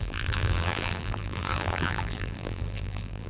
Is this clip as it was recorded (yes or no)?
no